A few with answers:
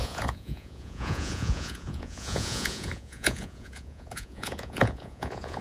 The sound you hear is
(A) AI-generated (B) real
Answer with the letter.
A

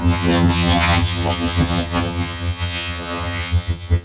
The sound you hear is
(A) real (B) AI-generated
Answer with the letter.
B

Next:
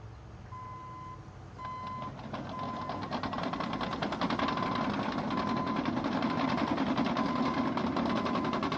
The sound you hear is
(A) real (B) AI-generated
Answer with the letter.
A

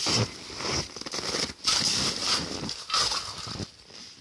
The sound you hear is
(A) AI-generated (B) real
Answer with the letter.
B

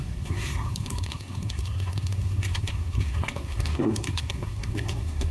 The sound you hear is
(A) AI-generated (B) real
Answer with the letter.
A